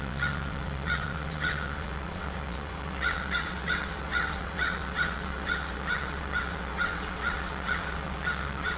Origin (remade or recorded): remade